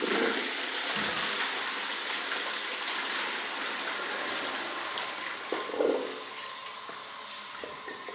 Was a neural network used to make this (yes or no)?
no